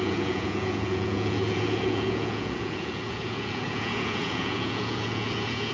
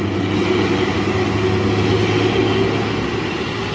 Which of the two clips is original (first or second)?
second